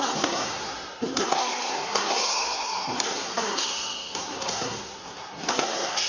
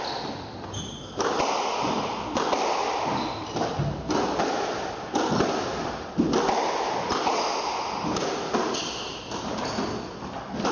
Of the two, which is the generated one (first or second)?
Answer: first